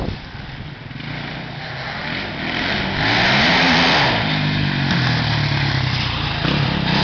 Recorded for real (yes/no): yes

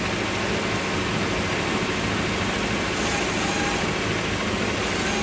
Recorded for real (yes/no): yes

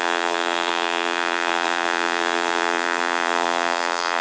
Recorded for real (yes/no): no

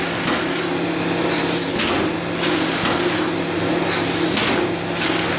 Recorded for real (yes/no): yes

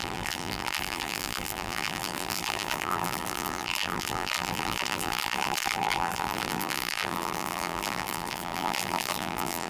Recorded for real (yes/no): no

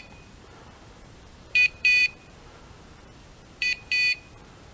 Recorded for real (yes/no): no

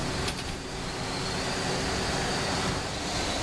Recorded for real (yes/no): yes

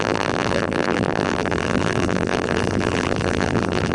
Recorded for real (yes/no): no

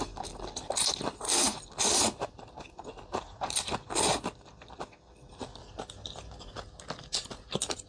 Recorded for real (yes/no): yes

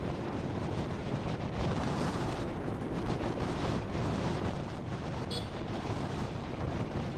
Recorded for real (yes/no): no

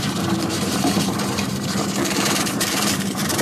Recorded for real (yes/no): no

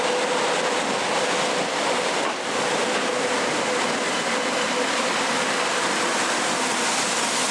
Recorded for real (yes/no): yes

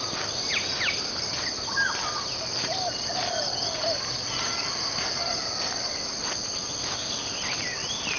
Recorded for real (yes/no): yes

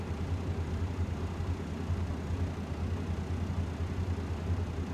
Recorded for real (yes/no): yes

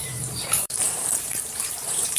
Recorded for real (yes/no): no